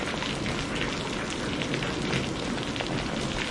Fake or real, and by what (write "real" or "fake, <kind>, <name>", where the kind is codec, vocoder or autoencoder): real